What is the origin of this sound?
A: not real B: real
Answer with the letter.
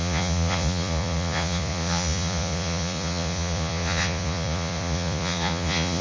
A